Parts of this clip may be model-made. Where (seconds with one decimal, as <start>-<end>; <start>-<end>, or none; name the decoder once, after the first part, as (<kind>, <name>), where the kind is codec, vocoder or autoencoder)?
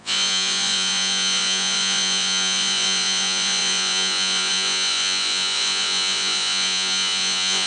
0.0-7.7 (vocoder, Vocos)